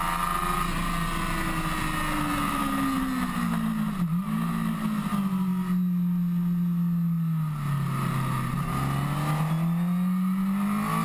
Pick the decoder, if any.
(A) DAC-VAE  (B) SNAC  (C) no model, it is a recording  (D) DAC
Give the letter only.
C